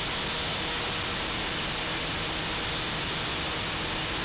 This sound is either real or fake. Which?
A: real